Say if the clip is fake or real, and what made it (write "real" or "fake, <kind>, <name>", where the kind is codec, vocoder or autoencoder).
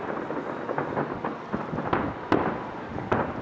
real